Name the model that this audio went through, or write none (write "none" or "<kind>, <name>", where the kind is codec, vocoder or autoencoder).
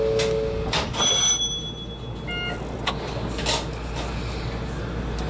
none